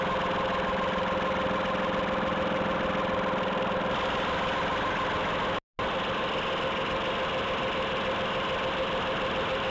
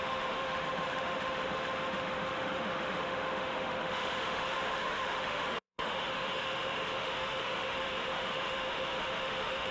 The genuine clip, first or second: first